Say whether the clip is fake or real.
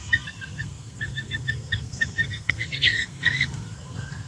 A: fake